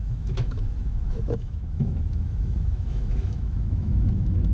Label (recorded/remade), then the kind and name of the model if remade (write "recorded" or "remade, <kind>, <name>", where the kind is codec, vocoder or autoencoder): remade, autoencoder, DAC-VAE